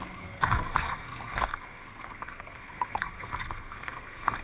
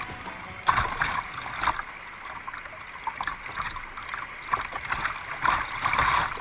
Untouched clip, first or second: second